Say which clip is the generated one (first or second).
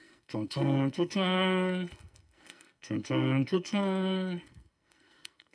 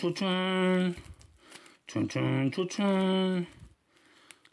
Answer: first